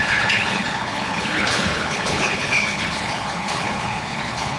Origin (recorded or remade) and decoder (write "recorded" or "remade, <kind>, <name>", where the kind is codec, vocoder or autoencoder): remade, codec, HILCodec